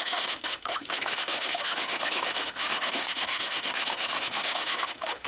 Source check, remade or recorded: remade